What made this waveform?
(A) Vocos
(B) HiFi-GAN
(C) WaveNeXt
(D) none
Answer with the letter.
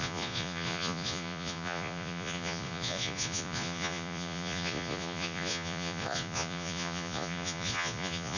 A